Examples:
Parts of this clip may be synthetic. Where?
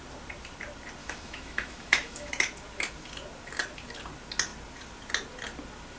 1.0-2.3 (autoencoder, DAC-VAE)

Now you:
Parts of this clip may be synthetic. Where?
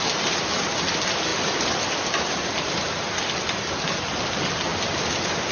none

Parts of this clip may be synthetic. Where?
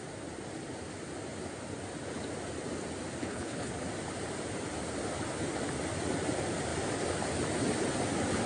3.2-3.7 (codec, HILCodec)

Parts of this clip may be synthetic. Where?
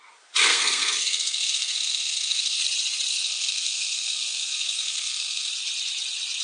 0.5-2.6 (codec, SNAC); 3.1-5.5